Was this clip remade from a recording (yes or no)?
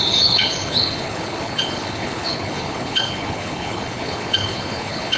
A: yes